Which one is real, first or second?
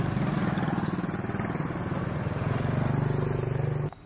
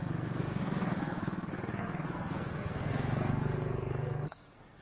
first